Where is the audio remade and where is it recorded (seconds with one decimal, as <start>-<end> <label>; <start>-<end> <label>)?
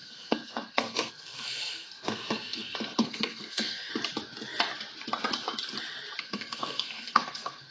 0.0-3.9 remade; 3.9-6.2 recorded; 6.2-7.7 remade